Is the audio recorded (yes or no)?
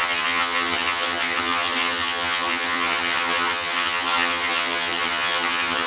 no